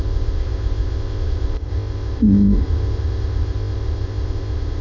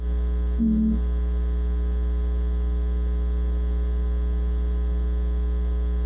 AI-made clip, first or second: first